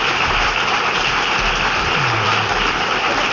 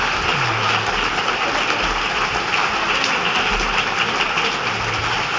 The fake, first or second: first